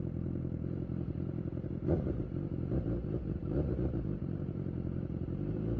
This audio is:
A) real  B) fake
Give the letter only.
B